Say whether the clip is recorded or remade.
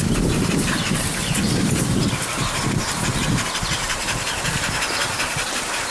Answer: remade